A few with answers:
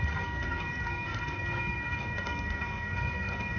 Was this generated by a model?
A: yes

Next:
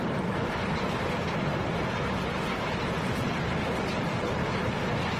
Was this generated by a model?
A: no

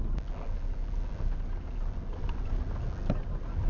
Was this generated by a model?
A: no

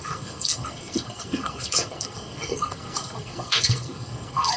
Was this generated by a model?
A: yes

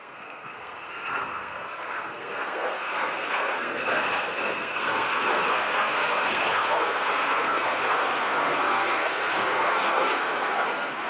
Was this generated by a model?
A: yes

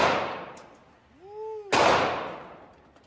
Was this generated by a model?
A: no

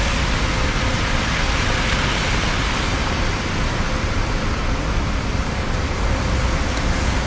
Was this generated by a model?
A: no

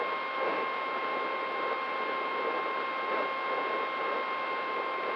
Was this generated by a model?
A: no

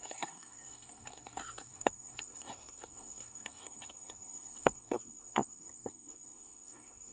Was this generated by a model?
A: yes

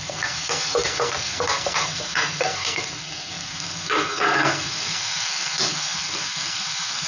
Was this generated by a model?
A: yes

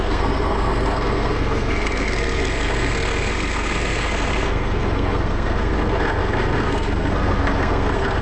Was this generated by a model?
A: yes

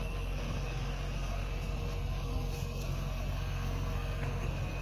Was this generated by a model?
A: yes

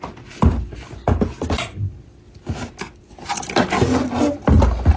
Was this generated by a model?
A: no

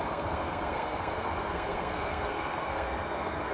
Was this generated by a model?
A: yes